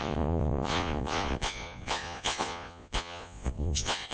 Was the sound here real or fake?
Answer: fake